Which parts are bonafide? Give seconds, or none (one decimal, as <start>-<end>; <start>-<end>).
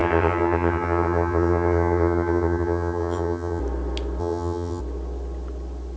3.6-4.2; 4.8-6.0